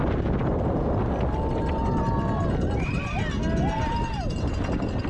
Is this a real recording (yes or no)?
yes